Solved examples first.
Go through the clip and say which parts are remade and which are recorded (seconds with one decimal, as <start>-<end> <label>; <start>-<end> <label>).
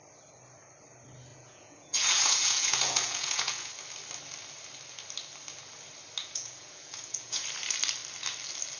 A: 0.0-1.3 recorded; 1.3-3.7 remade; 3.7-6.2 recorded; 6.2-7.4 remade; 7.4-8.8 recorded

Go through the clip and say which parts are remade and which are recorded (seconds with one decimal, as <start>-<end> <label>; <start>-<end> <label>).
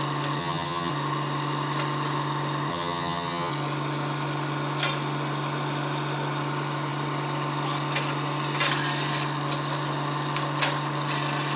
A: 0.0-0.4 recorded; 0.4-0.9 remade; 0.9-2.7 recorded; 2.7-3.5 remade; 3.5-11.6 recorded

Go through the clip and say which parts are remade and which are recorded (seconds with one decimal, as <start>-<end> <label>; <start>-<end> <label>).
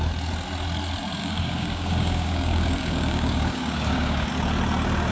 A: 0.0-1.2 recorded; 1.2-4.3 remade; 4.3-5.1 recorded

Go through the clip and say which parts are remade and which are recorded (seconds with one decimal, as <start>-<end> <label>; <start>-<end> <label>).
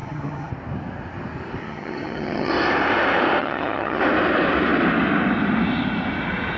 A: 0.0-0.5 remade; 0.5-1.6 recorded; 1.6-2.5 remade; 2.5-3.4 recorded; 3.4-4.0 remade; 4.0-6.6 recorded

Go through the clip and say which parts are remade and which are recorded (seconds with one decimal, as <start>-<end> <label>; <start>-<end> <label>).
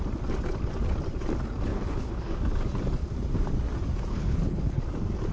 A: 0.0-1.7 recorded; 1.7-2.4 remade; 2.4-4.1 recorded; 4.1-4.8 remade; 4.8-5.3 recorded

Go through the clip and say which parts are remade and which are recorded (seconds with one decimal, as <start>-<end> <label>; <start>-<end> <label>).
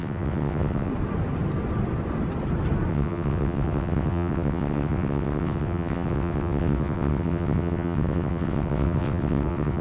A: 0.0-0.9 remade; 0.9-2.9 recorded; 2.9-9.8 remade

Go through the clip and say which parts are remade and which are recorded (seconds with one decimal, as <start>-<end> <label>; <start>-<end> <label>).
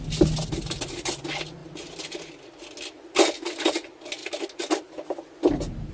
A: 0.0-5.9 recorded